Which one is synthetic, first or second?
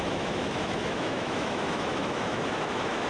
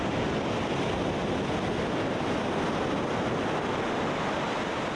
first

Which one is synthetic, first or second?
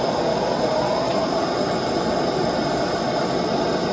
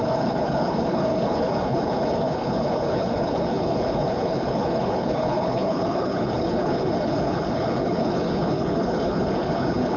second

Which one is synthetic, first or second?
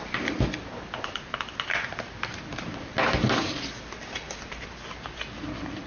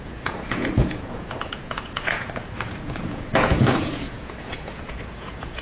second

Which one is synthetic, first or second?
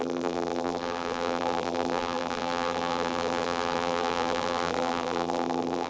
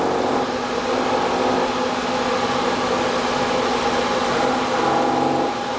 first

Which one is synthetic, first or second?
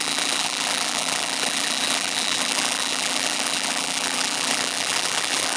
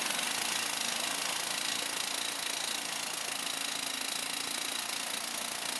first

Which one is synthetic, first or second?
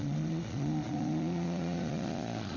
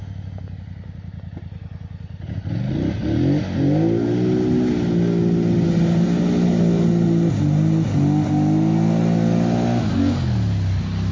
first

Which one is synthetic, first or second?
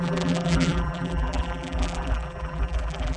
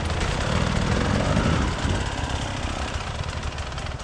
first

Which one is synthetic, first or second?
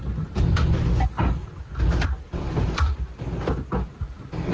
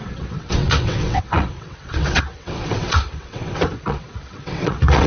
second